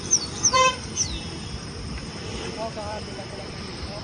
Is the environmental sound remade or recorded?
remade